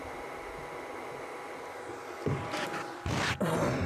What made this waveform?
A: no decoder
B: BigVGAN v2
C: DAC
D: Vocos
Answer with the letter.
A